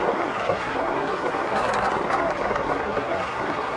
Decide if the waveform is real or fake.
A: fake